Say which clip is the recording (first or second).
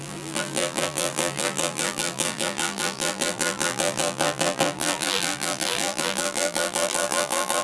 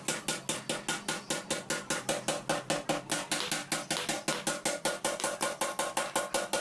second